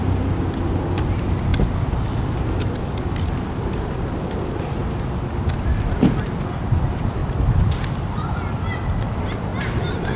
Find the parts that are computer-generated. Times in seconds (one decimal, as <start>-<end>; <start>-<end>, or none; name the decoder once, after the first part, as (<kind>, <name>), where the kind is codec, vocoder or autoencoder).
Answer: 9.5-10.2 (vocoder, BigVGAN v2)